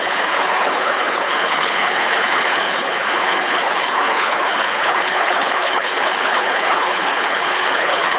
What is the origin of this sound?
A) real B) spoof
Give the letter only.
B